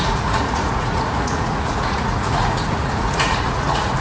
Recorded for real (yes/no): no